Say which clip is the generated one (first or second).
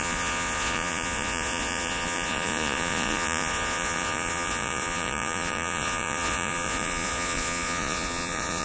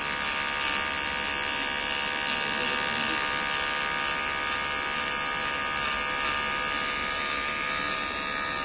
first